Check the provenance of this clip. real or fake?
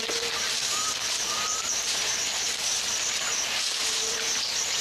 fake